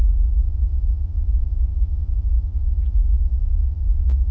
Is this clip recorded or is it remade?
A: remade